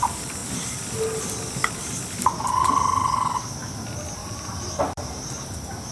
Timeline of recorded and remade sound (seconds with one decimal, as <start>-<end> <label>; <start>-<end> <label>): 0.0-4.2 recorded; 4.2-5.2 remade; 5.2-5.9 recorded